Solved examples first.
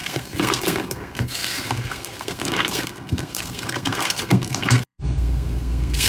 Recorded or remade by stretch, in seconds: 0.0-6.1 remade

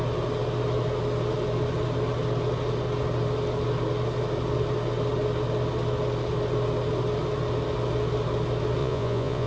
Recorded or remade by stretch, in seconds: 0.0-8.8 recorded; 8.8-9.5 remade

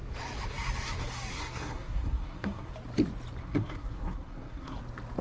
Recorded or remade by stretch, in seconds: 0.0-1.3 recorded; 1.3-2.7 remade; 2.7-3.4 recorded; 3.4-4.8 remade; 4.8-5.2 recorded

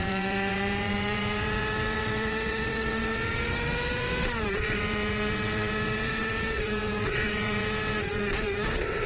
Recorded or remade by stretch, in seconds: 0.0-9.1 remade

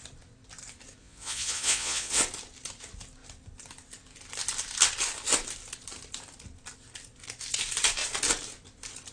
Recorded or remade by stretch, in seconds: 0.0-1.0 recorded; 1.0-2.2 remade; 2.2-9.1 recorded